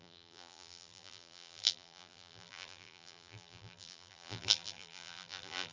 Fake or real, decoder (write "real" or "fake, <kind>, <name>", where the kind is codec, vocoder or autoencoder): fake, vocoder, BigVGAN v2